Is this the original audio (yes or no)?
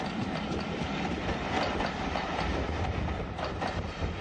no